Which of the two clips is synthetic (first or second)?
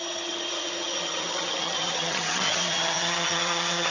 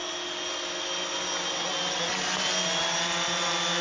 first